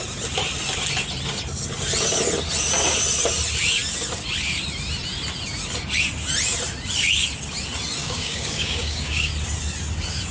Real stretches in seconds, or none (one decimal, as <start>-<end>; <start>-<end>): 0.0-8.0; 9.3-10.3